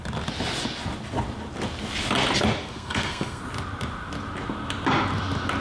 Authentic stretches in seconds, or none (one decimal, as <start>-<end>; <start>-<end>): 0.0-2.6; 3.4-5.6